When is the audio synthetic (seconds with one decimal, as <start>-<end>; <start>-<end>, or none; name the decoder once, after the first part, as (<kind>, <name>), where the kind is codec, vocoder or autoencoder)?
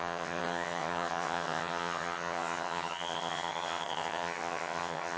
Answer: 0.0-5.2 (vocoder, HiFi-GAN)